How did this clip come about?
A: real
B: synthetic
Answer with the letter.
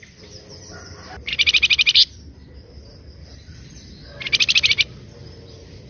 A